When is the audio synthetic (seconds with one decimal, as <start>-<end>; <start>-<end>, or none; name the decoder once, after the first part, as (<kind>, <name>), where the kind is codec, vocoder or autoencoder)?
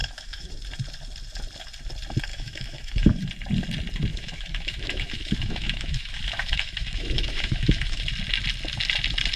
0.0-0.5 (autoencoder, DAC-VAE); 2.3-3.2; 4.1-8.0